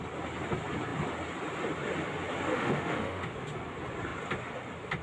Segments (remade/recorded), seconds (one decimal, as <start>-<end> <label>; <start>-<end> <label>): 0.0-2.5 recorded; 2.5-3.3 remade; 3.3-5.0 recorded